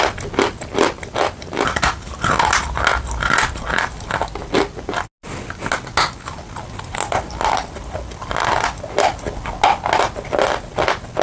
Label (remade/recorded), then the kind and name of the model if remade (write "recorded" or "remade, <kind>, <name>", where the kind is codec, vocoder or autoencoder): recorded